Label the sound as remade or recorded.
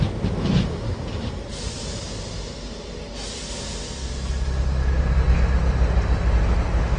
recorded